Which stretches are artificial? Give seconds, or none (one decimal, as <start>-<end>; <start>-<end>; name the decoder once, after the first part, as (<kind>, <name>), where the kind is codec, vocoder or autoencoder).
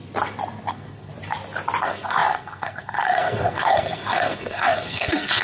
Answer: 0.7-1.1 (codec, SNAC); 1.8-5.4